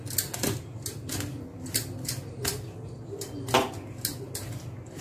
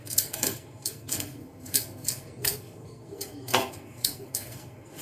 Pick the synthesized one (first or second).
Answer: second